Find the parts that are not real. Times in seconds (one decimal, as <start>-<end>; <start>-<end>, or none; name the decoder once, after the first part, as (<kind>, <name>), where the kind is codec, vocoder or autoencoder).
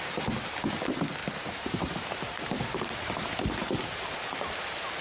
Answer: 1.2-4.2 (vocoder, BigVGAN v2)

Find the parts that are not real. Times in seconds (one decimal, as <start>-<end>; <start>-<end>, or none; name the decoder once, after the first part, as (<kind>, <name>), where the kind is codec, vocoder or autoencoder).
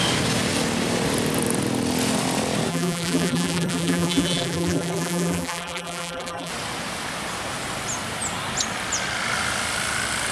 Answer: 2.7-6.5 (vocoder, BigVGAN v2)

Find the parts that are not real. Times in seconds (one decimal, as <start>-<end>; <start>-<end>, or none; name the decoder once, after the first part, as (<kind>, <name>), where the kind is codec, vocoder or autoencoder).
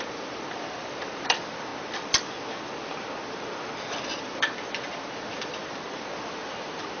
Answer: 0.0-1.7 (vocoder, BigVGAN v2); 4.2-7.0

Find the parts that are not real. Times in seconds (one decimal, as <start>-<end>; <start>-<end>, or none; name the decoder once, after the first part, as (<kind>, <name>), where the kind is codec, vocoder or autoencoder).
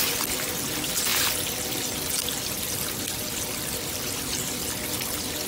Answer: none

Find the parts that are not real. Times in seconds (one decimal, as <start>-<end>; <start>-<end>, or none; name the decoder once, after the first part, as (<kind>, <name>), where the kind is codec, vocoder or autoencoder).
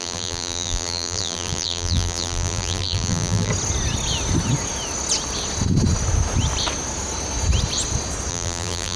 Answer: 0.0-3.5 (vocoder, BigVGAN v2); 8.3-9.0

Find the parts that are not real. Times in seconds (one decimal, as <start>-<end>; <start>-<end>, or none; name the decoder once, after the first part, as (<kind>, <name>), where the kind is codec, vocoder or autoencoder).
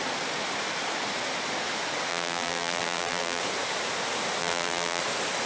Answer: 2.1-3.4 (vocoder, BigVGAN v2); 4.4-5.0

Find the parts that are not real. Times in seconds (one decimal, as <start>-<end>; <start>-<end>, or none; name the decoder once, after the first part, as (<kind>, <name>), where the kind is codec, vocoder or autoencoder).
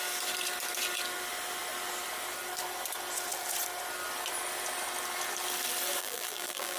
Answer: 6.0-6.8 (vocoder, BigVGAN v2)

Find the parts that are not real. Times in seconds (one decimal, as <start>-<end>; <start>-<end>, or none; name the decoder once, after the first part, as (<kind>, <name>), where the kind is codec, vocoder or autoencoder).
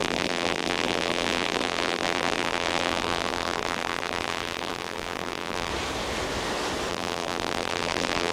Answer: 0.0-5.7 (vocoder, BigVGAN v2); 6.9-8.3